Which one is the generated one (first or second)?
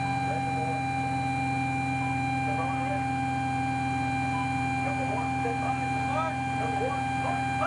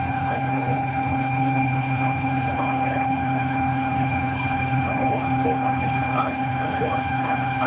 second